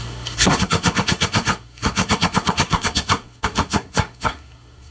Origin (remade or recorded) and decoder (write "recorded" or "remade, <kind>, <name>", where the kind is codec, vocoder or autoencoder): remade, codec, SNAC